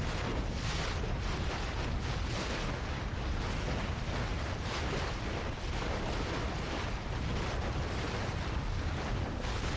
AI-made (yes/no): no